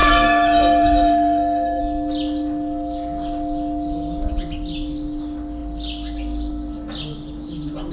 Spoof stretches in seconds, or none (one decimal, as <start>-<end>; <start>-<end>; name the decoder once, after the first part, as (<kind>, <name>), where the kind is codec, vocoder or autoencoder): 0.0-1.8 (codec, SNAC)